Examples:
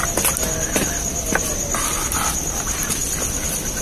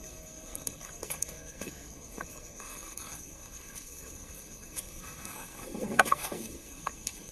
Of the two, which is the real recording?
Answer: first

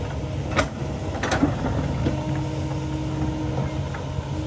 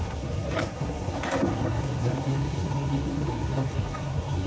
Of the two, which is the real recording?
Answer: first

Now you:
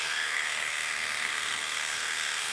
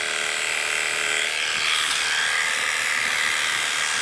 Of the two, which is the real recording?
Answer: second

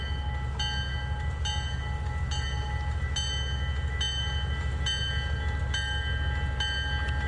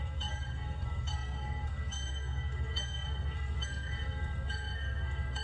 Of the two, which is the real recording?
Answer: first